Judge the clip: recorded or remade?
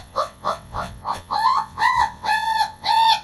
remade